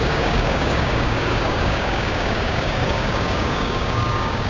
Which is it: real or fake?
fake